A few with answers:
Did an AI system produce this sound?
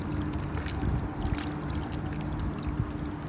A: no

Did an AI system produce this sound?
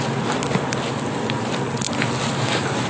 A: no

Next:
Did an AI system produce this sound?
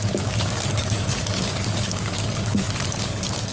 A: yes